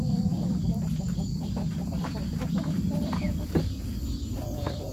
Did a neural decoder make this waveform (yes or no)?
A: yes